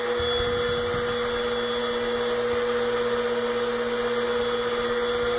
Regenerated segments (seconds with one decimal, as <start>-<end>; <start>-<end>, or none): none